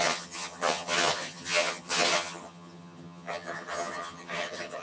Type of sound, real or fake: fake